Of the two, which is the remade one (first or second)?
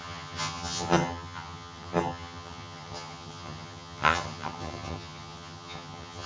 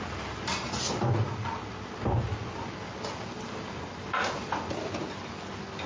first